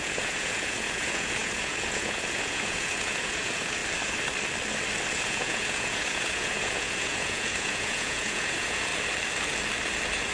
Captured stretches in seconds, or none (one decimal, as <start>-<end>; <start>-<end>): 3.8-5.1; 8.9-10.3